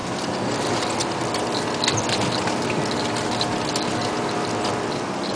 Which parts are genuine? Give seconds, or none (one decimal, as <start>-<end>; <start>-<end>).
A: 0.0-5.4

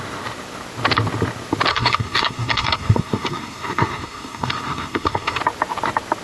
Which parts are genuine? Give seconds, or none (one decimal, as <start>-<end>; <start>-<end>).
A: 0.0-1.7; 5.4-6.2

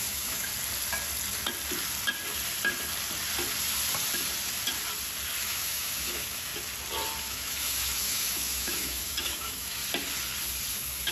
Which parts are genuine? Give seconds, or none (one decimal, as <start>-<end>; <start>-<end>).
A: 0.5-5.4; 6.5-7.2; 9.8-10.7

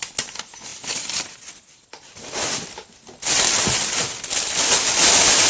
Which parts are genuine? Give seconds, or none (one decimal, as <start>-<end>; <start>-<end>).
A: 0.0-5.5